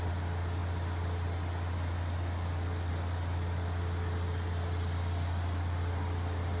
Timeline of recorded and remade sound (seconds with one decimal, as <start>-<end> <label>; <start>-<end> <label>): 0.0-6.6 recorded